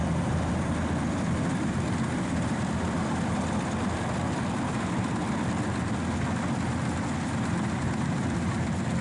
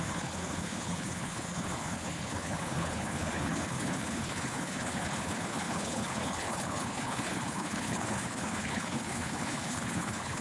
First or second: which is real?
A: first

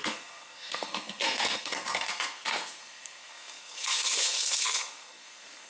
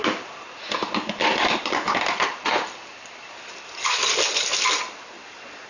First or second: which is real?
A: second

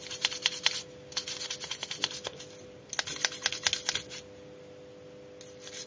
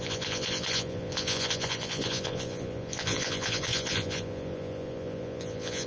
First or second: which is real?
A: first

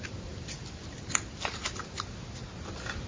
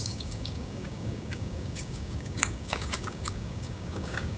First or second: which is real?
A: first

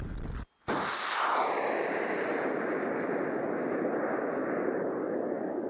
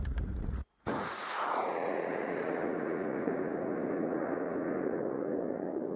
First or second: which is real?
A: first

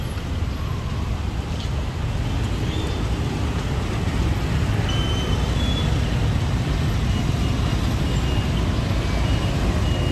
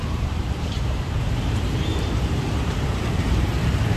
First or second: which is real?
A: first